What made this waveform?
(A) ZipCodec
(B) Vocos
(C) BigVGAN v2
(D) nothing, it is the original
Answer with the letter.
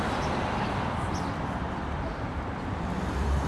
C